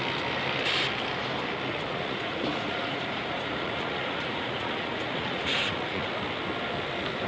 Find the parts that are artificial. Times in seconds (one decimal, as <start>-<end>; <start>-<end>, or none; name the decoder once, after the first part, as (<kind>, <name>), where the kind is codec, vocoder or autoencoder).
1.7-6.1 (vocoder, Vocos)